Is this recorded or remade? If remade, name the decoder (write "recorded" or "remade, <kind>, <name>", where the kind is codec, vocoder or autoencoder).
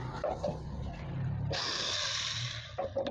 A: recorded